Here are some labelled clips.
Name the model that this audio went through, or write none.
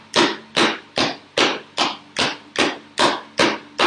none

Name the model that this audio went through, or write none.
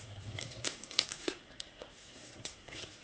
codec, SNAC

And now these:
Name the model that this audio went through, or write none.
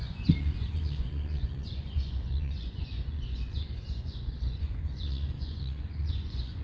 vocoder, Vocos